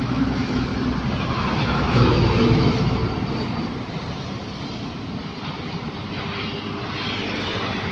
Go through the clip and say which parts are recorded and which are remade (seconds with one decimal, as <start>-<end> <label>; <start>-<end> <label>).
0.0-0.7 remade; 0.7-1.3 recorded; 1.3-3.0 remade; 3.0-7.9 recorded